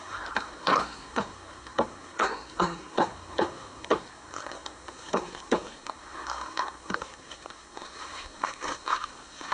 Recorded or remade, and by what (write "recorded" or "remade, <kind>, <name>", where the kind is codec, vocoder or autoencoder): remade, codec, SNAC